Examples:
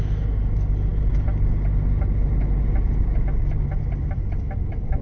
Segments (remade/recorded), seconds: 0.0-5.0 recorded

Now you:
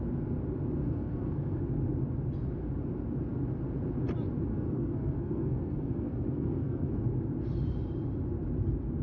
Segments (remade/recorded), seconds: 0.0-0.8 recorded; 0.8-1.6 remade; 1.6-4.5 recorded; 4.5-6.9 remade; 6.9-9.0 recorded